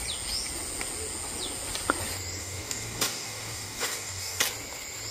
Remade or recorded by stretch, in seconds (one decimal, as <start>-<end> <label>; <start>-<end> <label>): 0.0-2.4 recorded; 2.4-4.4 remade; 4.4-5.1 recorded

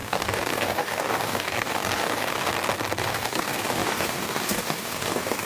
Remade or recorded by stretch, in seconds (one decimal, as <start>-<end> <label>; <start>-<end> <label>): 0.0-2.5 remade; 2.5-3.0 recorded; 3.0-5.5 remade

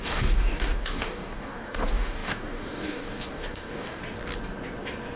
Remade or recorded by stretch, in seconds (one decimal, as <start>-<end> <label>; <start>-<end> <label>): 0.0-4.0 remade; 4.0-5.2 recorded

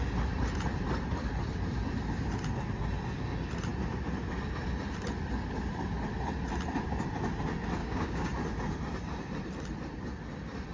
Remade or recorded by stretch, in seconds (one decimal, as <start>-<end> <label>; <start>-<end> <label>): 0.0-7.8 recorded; 7.8-8.3 remade; 8.3-10.7 recorded

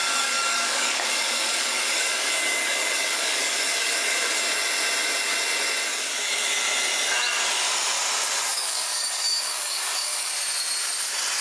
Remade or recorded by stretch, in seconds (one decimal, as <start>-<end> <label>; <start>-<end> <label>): 0.0-4.4 remade; 4.4-5.9 recorded; 5.9-6.6 remade; 6.6-8.5 recorded; 8.5-10.3 remade; 10.3-11.4 recorded